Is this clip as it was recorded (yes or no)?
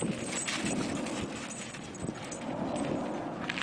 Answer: yes